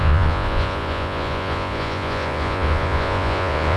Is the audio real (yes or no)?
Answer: no